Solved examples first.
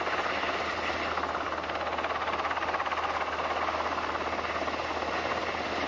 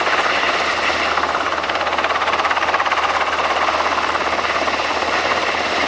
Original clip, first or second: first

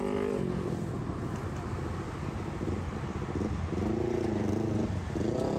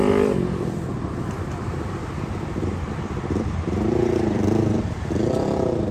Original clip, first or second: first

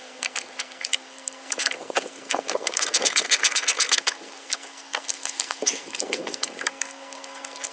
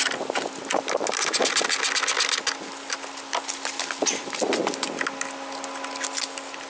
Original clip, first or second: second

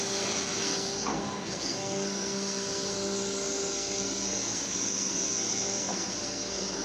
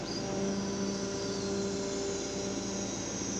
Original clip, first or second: second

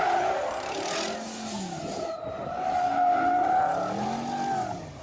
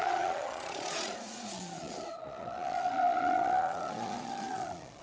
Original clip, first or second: first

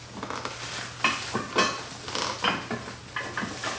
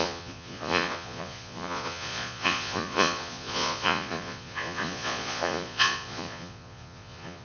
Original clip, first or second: first